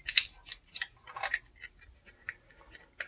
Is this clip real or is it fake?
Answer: real